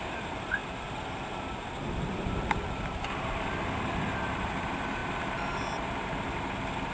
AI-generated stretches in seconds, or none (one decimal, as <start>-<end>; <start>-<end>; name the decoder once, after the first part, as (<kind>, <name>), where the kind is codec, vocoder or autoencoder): none